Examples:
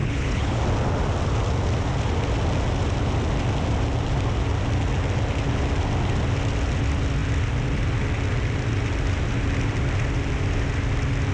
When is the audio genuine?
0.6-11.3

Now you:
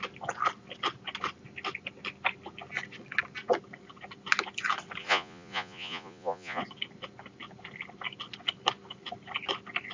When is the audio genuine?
0.0-5.0; 6.6-9.9

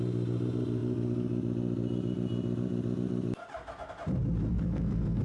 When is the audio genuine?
0.0-4.5

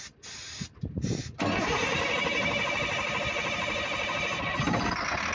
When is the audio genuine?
0.0-5.3

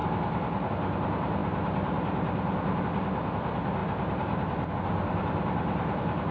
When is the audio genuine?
0.0-3.8; 4.7-6.3

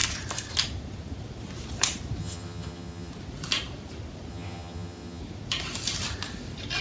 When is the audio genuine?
0.0-2.2; 3.1-4.3; 5.2-6.8